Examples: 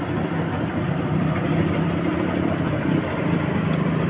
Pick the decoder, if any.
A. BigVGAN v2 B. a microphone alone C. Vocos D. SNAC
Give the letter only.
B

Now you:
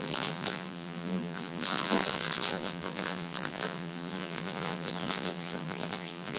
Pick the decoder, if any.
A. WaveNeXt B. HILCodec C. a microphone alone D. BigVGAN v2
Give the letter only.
D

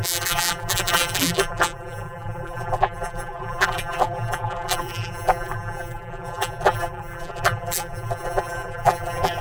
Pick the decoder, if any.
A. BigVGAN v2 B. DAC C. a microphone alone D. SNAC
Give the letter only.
A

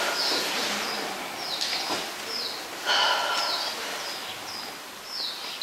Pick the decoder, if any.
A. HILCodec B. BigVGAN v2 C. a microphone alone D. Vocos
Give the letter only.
C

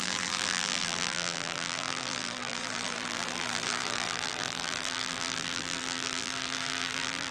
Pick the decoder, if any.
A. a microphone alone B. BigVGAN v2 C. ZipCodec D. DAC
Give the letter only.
B